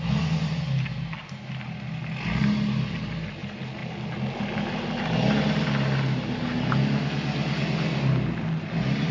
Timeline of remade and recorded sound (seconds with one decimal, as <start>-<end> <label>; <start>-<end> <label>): 0.0-9.1 recorded